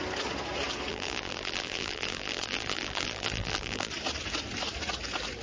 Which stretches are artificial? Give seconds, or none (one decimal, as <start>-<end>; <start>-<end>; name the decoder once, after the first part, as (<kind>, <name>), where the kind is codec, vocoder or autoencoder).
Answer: 0.9-3.9 (vocoder, BigVGAN v2)